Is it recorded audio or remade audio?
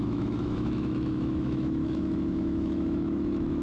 remade